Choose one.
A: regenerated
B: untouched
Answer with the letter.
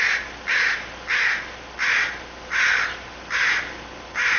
B